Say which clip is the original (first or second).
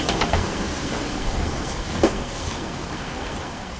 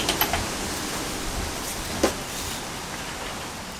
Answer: second